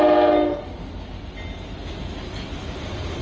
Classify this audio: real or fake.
real